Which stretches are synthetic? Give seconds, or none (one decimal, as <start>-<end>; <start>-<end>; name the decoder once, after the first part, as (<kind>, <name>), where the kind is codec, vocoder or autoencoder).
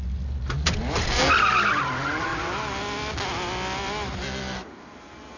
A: none